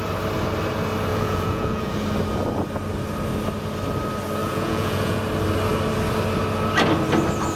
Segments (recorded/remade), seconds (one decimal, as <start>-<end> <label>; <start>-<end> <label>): 0.0-1.1 recorded; 1.1-1.9 remade; 1.9-4.4 recorded; 4.4-5.2 remade; 5.2-7.6 recorded